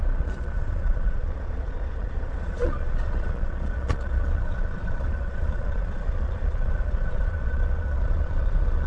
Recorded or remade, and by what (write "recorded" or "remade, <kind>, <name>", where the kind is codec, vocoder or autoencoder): remade, vocoder, Vocos